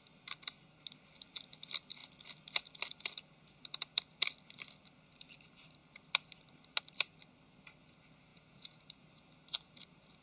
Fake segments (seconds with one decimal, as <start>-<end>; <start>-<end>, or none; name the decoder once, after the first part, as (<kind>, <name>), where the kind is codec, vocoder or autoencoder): 8.3-8.8 (vocoder, Vocos)